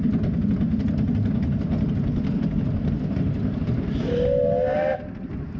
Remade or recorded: recorded